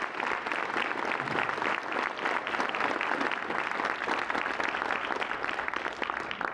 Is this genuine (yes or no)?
yes